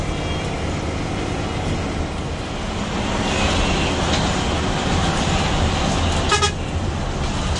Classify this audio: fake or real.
real